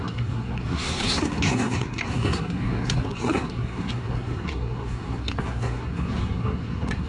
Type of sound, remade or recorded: remade